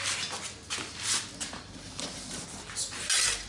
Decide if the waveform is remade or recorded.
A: recorded